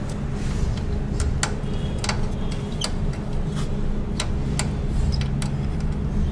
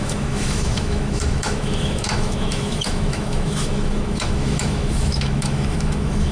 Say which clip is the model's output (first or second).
second